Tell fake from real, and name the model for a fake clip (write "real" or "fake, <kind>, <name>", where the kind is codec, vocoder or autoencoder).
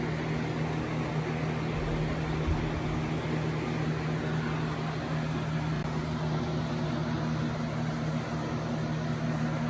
real